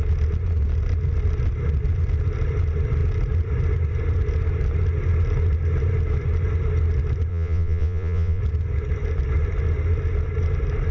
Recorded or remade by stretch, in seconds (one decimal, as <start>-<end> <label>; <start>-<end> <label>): 0.0-7.3 recorded; 7.3-8.4 remade; 8.4-10.9 recorded